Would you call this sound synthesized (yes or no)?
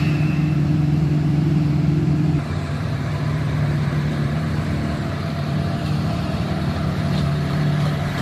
yes